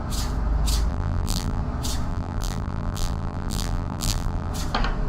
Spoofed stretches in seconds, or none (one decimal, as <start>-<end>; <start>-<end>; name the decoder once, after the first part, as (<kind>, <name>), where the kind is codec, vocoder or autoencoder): 0.9-1.6 (vocoder, BigVGAN v2); 2.1-4.5